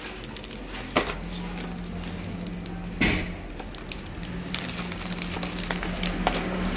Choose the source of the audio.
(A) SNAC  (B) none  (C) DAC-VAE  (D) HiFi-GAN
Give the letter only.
B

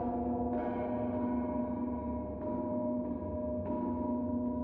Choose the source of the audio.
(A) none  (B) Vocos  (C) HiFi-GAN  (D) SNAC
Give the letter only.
A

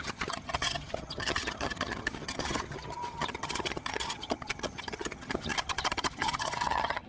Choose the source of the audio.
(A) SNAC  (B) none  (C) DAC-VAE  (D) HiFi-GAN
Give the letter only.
D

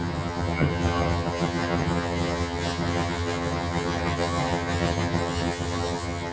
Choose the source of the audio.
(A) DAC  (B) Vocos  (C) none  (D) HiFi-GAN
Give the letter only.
D